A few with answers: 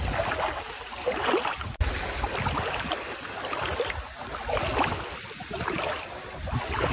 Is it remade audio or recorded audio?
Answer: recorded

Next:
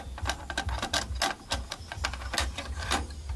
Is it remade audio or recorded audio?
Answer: recorded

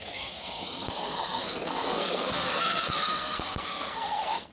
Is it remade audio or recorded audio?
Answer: remade